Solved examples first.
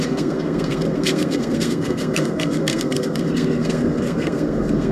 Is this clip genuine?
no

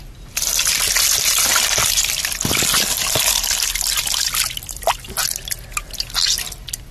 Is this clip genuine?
yes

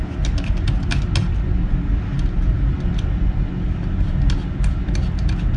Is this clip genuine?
yes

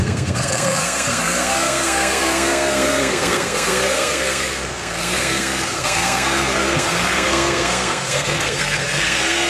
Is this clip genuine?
no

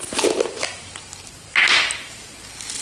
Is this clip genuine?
yes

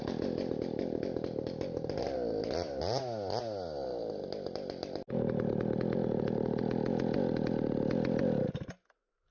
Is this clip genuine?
yes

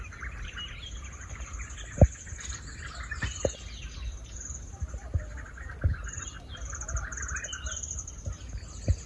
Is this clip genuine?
yes